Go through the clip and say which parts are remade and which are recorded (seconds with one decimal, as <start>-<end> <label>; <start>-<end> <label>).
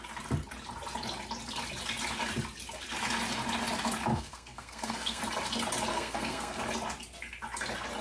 0.0-4.1 recorded; 4.1-5.2 remade; 5.2-5.9 recorded; 5.9-6.6 remade; 6.6-8.0 recorded